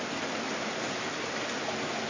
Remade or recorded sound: recorded